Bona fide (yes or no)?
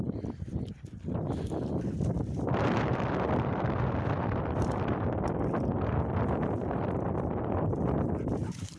no